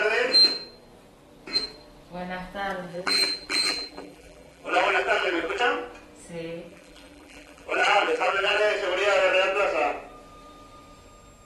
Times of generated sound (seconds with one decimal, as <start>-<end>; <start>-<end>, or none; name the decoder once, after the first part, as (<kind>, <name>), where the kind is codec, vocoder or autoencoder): 2.9-5.6 (vocoder, BigVGAN v2); 6.7-8.6